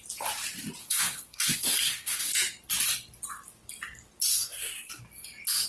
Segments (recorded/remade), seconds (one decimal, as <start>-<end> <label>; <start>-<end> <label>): 0.0-0.8 recorded; 0.8-2.3 remade; 2.3-4.3 recorded; 4.3-4.9 remade; 4.9-5.7 recorded